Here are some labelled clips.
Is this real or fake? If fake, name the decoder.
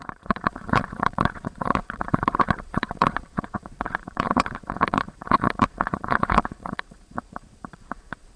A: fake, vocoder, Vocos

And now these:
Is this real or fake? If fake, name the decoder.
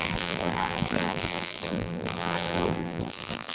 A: fake, vocoder, BigVGAN v2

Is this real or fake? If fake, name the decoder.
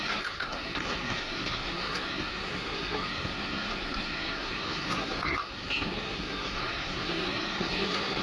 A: fake, codec, SNAC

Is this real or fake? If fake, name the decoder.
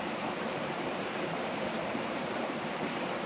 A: fake, vocoder, BigVGAN v2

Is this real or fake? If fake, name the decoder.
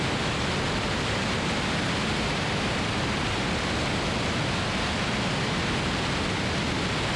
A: real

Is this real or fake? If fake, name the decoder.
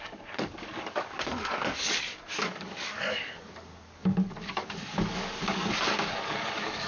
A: fake, codec, DAC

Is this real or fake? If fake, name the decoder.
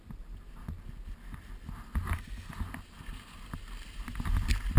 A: real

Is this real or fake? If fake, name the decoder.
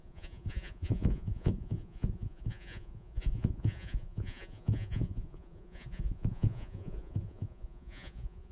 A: fake, vocoder, Vocos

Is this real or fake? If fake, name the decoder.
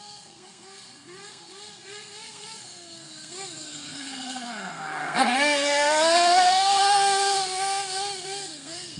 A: fake, codec, SNAC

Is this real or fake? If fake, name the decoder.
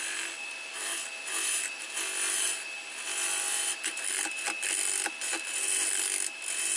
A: real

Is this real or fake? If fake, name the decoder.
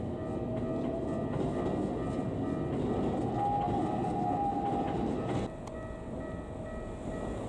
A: real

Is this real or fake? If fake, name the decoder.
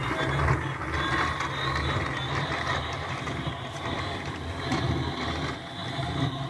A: real